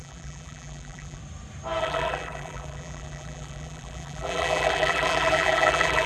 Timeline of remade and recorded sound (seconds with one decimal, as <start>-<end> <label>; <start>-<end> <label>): 0.0-1.2 remade; 1.2-1.8 recorded; 1.8-6.1 remade